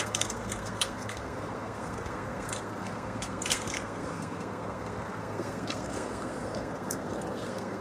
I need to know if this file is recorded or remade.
remade